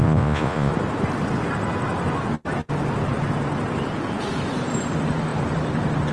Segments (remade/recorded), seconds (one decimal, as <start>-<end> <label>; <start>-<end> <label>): 0.0-0.7 remade; 0.7-6.1 recorded